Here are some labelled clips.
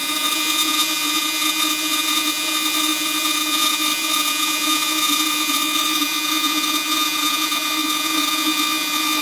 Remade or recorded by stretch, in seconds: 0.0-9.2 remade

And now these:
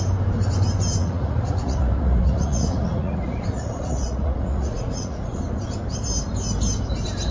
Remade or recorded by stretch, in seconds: 0.0-1.0 recorded; 1.0-5.4 remade; 5.4-7.3 recorded